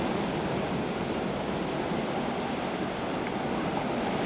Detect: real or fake real